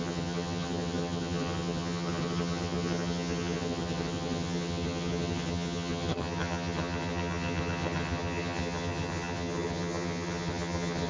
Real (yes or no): no